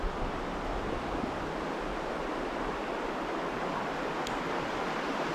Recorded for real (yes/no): yes